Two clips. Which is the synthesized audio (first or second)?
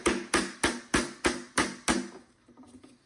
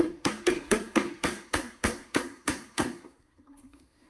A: second